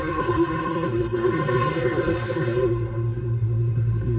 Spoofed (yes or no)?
yes